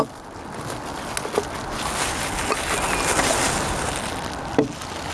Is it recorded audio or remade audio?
recorded